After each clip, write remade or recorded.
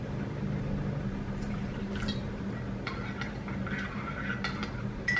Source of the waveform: recorded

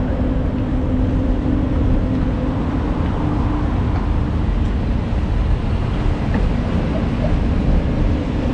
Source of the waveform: recorded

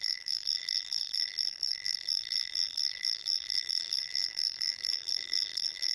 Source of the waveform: remade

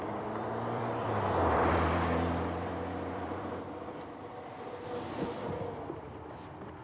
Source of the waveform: remade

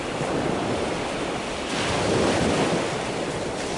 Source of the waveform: recorded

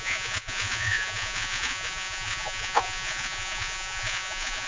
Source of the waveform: remade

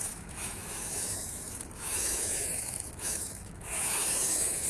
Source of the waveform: remade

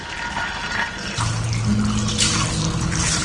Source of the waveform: recorded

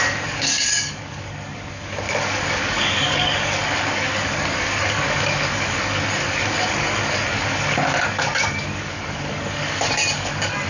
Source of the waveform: remade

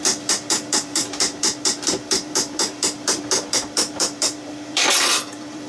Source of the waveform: remade